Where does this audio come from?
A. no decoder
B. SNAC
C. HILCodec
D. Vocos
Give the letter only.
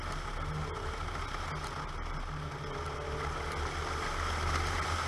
A